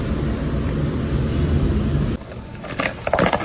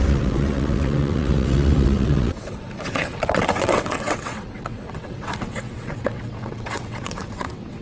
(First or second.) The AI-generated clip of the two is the second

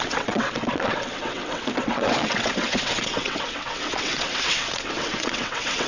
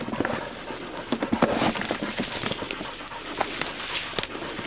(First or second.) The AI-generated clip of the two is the first